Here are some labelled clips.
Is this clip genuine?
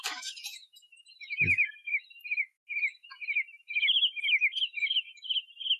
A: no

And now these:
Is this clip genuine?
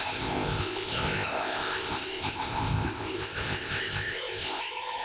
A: no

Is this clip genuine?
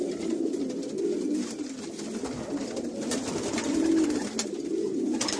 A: yes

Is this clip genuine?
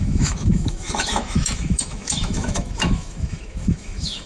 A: no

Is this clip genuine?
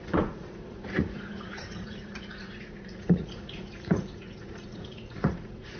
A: no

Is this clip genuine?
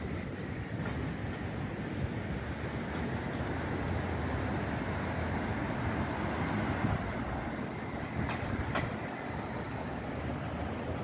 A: yes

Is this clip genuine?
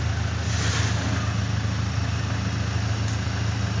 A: yes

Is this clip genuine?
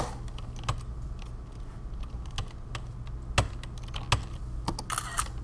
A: yes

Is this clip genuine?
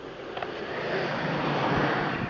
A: yes